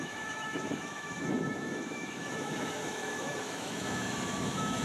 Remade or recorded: remade